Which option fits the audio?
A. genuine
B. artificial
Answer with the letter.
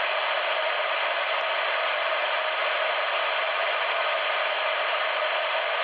A